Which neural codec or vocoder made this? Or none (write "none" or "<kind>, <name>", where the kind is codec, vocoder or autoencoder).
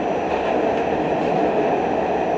none